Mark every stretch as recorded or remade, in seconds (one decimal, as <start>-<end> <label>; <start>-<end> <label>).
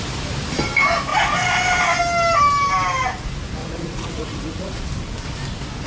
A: 0.0-3.6 recorded; 3.6-4.8 remade; 4.8-5.9 recorded